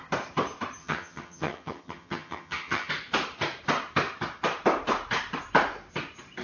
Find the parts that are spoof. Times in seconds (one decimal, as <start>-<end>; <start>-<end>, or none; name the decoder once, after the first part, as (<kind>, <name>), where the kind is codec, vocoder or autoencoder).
0.8-2.9 (vocoder, HiFi-GAN)